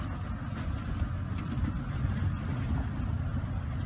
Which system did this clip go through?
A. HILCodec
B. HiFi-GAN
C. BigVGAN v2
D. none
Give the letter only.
D